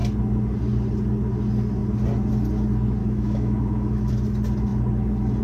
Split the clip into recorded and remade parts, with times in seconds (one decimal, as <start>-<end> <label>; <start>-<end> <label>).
0.0-3.0 recorded; 3.0-4.1 remade; 4.1-5.4 recorded

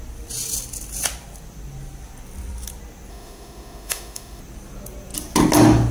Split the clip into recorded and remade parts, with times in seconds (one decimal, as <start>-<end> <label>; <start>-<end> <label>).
0.0-3.1 recorded; 3.1-4.4 remade; 4.4-5.9 recorded